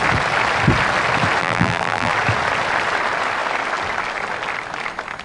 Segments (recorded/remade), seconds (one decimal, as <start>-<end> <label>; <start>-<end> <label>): 0.0-1.4 recorded; 1.4-2.1 remade; 2.1-5.2 recorded